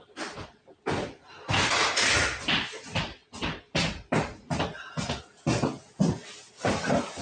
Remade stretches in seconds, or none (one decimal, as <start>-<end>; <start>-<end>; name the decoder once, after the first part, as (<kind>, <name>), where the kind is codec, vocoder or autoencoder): none